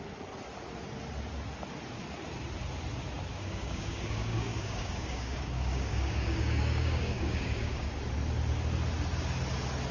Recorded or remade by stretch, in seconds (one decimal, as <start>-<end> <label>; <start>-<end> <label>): 0.0-3.3 recorded; 3.3-8.0 remade; 8.0-9.9 recorded